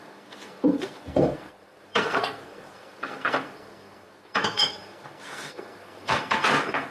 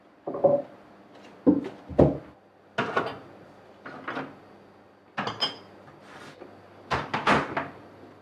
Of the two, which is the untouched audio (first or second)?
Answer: second